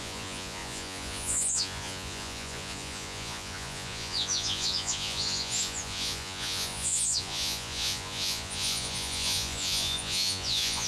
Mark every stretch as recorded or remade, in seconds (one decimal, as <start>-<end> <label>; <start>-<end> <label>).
0.0-10.9 remade

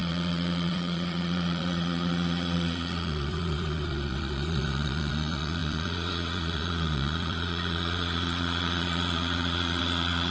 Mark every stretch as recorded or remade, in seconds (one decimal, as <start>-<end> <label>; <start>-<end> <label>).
0.0-10.3 remade

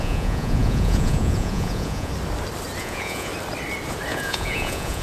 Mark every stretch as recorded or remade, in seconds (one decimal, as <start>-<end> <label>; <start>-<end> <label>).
0.0-2.1 remade; 2.1-2.8 recorded; 2.8-3.3 remade; 3.3-4.1 recorded; 4.1-5.0 remade

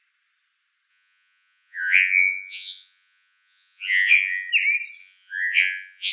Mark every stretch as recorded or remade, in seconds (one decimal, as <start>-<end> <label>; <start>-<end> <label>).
0.0-0.9 recorded; 0.9-4.5 remade; 4.5-5.0 recorded; 5.0-6.1 remade

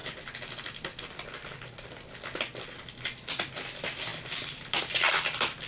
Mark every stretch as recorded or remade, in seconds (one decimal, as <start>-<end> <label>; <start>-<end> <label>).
0.0-5.7 recorded

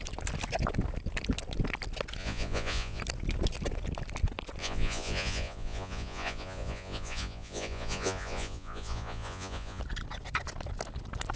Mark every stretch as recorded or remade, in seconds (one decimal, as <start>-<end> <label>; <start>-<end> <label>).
0.0-2.2 recorded; 2.2-3.0 remade; 3.0-4.6 recorded; 4.6-9.8 remade; 9.8-11.4 recorded

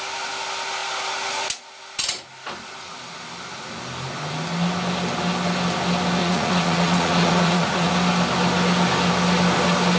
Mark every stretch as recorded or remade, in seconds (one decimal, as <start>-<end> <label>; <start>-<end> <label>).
0.0-6.2 recorded; 6.2-7.9 remade; 7.9-10.0 recorded